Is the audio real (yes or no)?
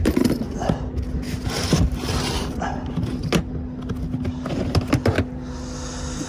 yes